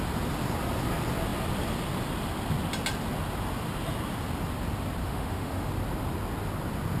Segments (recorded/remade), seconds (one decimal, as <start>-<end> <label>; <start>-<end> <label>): 0.0-5.0 recorded; 5.0-5.7 remade; 5.7-7.0 recorded